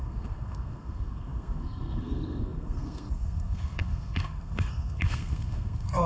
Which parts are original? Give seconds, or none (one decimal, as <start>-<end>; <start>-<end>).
none